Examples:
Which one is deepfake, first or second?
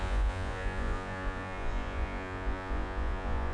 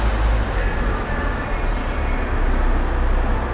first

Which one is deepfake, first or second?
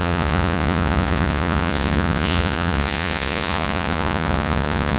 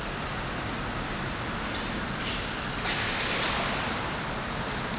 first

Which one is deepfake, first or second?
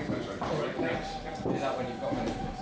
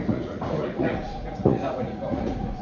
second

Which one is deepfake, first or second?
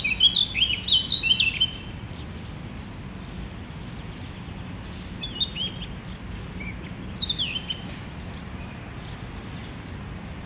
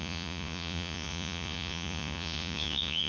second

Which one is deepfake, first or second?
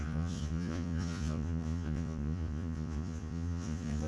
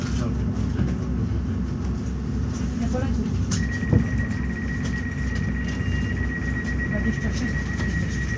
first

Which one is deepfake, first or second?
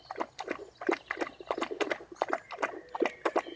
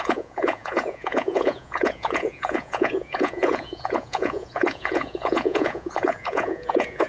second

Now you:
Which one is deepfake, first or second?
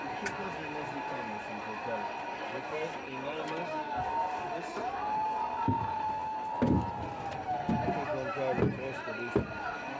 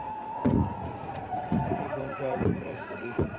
second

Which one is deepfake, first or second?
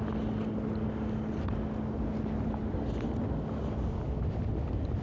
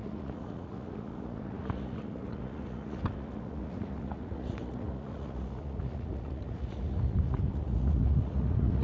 second